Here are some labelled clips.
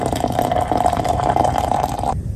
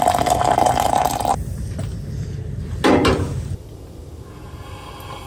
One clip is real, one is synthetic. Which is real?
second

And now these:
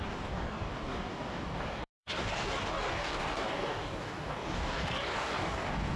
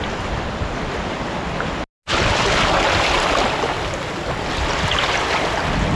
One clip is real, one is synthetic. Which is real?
second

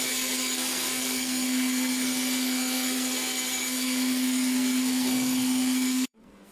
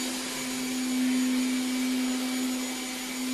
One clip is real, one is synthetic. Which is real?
second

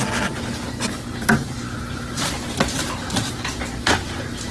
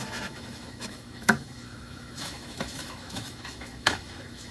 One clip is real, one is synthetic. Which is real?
first